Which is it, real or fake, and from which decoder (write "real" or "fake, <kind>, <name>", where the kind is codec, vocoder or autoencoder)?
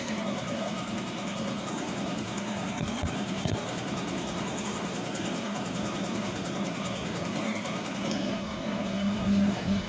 fake, codec, SNAC